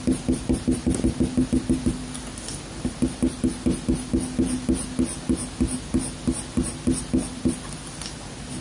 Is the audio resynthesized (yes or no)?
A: no